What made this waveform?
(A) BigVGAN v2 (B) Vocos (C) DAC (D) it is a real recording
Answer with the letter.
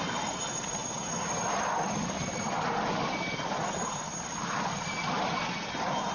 D